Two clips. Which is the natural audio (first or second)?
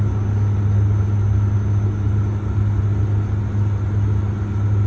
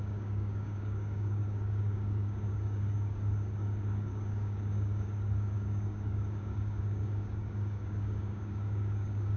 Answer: first